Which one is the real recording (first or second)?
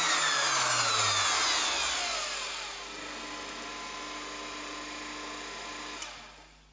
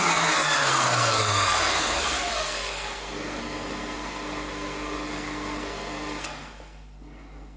first